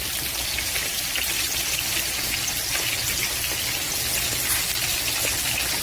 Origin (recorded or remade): recorded